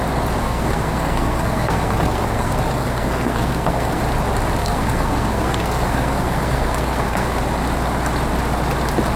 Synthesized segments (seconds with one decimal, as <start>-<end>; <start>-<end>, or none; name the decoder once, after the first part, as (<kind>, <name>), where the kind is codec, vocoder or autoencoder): 0.4-4.0 (codec, SNAC); 4.6-7.4